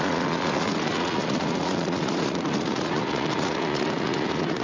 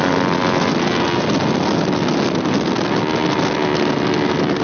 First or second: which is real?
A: second